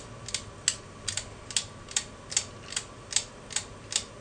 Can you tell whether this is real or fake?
real